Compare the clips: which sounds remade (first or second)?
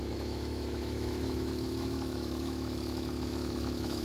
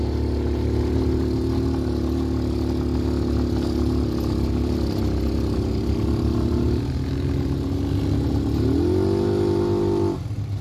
first